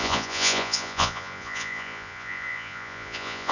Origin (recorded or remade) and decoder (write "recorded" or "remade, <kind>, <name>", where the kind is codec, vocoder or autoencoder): remade, vocoder, Vocos